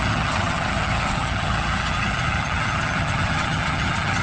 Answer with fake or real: fake